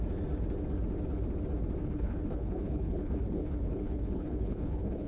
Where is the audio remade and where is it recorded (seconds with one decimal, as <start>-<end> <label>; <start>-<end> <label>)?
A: 0.0-1.8 recorded; 1.8-5.1 remade